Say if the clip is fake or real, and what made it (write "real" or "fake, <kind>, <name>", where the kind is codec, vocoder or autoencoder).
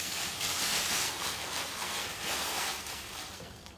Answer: fake, codec, SNAC